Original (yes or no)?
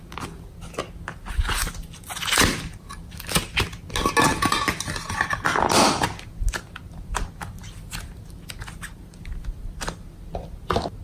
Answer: yes